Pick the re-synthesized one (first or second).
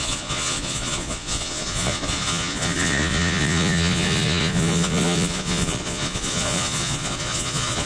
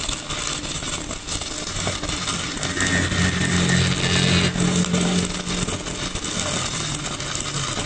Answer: first